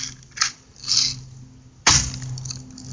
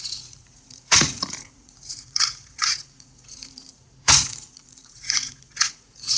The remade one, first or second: second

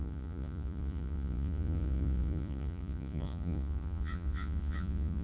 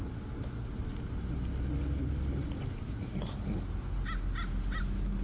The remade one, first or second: first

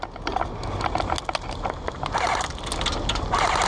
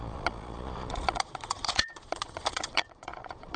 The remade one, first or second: second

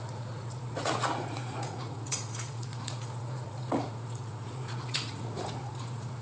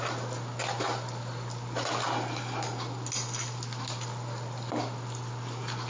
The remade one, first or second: first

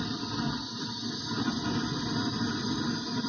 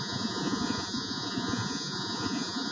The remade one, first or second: second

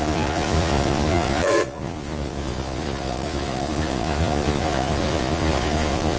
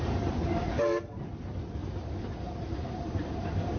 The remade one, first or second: first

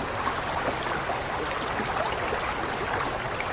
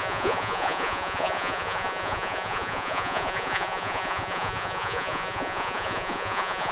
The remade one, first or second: second